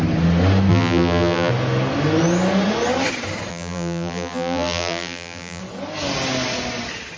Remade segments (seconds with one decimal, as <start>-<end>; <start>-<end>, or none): 0.7-1.5; 3.5-5.6